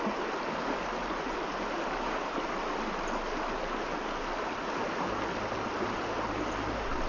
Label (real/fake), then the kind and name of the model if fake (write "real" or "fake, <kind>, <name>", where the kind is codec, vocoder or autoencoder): real